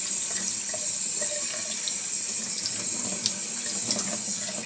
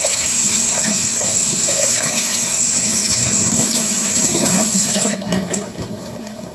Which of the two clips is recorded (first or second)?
first